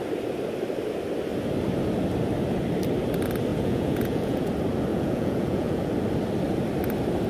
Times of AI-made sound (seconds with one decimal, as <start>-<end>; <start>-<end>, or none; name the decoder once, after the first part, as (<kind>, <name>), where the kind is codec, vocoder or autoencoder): 3.5-4.5 (vocoder, Vocos); 4.9-5.9